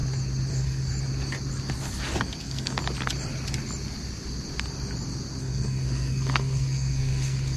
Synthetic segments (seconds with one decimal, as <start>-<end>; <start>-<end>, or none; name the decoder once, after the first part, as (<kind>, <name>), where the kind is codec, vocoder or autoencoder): 0.5-0.9 (codec, SNAC); 2.4-2.8; 5.4-7.6